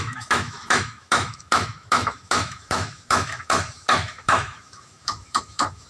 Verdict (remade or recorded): remade